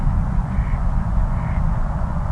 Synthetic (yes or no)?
yes